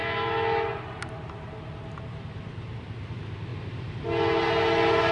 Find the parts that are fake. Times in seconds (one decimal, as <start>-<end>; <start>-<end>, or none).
none